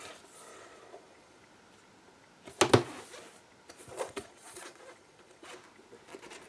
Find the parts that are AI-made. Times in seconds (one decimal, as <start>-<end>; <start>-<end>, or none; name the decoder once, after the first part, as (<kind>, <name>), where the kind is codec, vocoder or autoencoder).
0.5-1.4 (vocoder, Vocos); 3.9-5.5